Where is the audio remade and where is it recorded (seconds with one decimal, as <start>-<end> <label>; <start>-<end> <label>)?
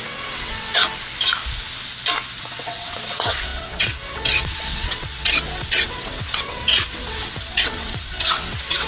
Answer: 0.0-0.8 remade; 0.8-2.4 recorded; 2.4-8.9 remade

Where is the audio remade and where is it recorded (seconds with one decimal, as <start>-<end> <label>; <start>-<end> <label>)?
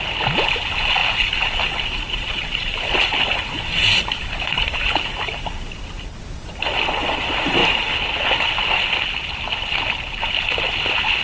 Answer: 0.0-11.2 recorded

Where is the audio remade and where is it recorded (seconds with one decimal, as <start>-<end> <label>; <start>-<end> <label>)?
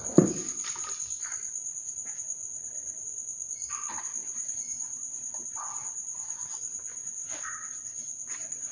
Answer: 0.0-2.4 recorded; 2.4-3.0 remade; 3.0-4.2 recorded; 4.2-5.5 remade; 5.5-7.2 recorded; 7.2-8.7 remade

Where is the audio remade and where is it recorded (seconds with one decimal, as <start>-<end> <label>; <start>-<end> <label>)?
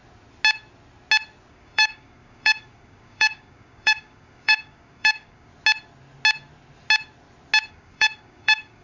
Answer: 0.0-1.5 recorded; 1.5-5.5 remade; 5.5-7.7 recorded; 7.7-8.8 remade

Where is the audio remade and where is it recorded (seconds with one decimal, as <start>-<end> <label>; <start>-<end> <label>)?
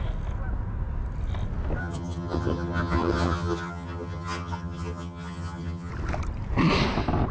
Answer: 0.0-1.8 recorded; 1.8-5.9 remade; 5.9-7.3 recorded